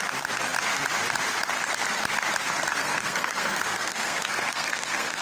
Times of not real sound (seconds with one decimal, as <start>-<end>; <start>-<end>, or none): 2.7-5.2